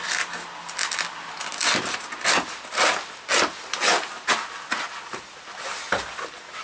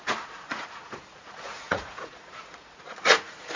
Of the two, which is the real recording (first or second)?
first